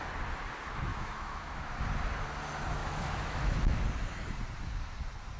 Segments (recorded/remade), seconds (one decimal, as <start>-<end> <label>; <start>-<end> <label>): 0.0-0.9 recorded; 0.9-1.8 remade; 1.8-2.8 recorded; 2.8-3.8 remade; 3.8-5.4 recorded